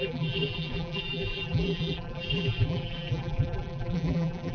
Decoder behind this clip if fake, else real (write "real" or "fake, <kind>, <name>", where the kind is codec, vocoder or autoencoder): fake, vocoder, BigVGAN v2